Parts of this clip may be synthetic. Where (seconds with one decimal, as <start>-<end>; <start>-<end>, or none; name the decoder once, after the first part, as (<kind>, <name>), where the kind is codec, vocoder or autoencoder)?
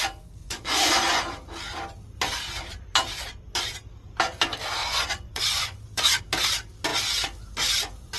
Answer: 0.4-1.2 (vocoder, Vocos); 4.8-6.2